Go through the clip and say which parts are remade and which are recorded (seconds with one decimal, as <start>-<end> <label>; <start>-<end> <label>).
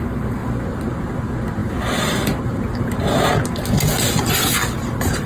0.0-1.6 recorded; 1.6-2.4 remade; 2.4-4.6 recorded; 4.6-5.3 remade